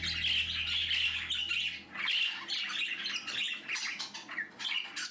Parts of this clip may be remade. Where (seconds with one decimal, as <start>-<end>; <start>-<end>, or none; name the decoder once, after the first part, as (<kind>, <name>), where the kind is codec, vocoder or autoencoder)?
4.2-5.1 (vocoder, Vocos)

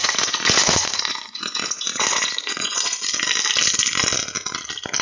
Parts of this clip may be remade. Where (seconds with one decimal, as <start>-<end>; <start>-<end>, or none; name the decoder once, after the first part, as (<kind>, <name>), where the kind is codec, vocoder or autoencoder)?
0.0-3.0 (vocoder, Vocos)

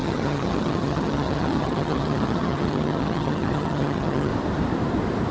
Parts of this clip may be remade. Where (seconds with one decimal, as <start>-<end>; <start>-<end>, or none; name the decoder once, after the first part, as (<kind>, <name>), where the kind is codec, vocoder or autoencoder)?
0.0-4.3 (vocoder, HiFi-GAN)

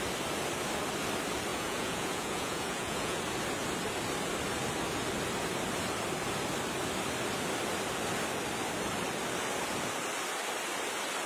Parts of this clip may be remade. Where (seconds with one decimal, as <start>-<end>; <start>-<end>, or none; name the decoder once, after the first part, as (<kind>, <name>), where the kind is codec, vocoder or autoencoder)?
1.5-3.2 (vocoder, Vocos)

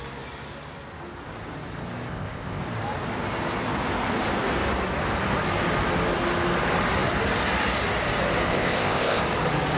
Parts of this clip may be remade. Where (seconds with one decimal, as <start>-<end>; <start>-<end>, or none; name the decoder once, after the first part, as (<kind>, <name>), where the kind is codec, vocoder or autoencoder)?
2.1-2.6 (codec, ZipCodec); 8.5-9.2

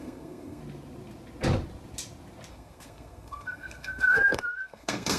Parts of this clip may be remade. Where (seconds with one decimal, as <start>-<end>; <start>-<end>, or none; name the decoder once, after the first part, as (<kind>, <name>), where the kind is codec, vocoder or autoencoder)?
0.0-0.6 (codec, SNAC); 2.5-5.2